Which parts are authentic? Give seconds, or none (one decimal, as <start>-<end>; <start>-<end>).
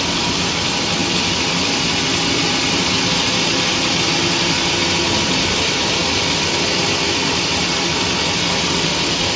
0.0-9.4